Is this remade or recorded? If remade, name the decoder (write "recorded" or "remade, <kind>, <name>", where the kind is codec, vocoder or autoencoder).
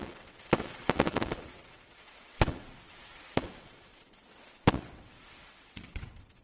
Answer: remade, vocoder, WaveNeXt